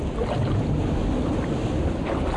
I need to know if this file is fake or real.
real